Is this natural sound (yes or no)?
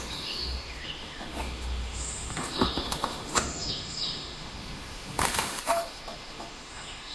no